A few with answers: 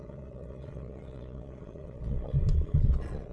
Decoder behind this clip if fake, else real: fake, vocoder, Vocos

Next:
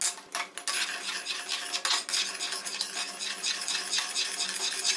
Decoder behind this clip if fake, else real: real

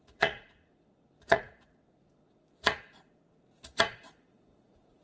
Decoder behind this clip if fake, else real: fake, vocoder, Vocos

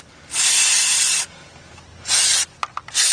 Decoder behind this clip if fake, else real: real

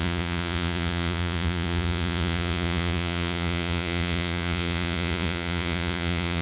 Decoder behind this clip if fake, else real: fake, vocoder, Vocos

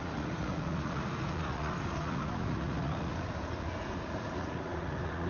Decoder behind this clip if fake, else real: fake, vocoder, Vocos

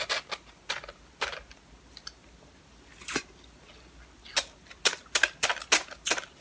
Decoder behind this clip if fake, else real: real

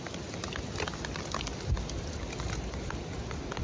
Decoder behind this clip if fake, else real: real